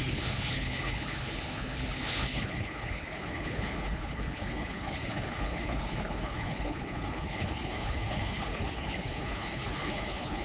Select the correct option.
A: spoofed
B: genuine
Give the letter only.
A